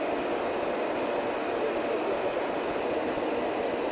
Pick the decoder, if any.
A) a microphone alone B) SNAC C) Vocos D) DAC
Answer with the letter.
A